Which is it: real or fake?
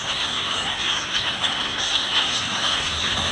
fake